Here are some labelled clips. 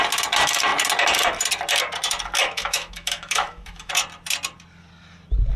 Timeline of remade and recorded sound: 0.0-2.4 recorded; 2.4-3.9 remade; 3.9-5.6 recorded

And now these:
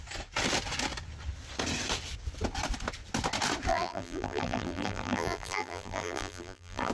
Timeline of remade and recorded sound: 0.0-3.7 recorded; 3.7-6.9 remade

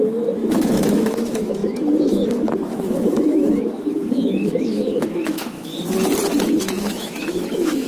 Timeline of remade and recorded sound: 0.0-5.7 remade; 5.7-6.6 recorded; 6.6-7.9 remade

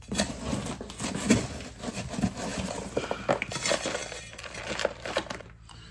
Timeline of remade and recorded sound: 0.0-2.5 recorded; 2.5-3.2 remade; 3.2-4.0 recorded; 4.0-5.9 remade

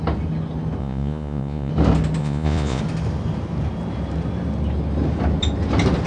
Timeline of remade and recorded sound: 0.0-0.8 recorded; 0.8-1.7 remade; 1.7-2.2 recorded; 2.2-2.8 remade; 2.8-6.1 recorded

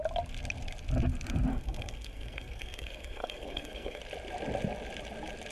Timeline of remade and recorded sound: 0.0-1.5 recorded; 1.5-4.0 remade; 4.0-5.5 recorded